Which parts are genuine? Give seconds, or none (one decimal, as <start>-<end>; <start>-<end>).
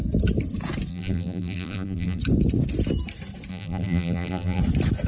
0.0-0.9; 2.2-3.5; 4.6-5.1